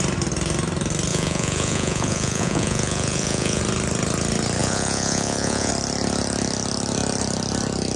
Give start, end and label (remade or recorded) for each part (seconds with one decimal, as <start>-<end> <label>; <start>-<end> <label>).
0.0-1.1 recorded; 1.1-3.6 remade; 3.6-4.6 recorded; 4.6-5.7 remade; 5.7-8.0 recorded